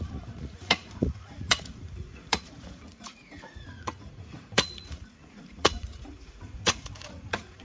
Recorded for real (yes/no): no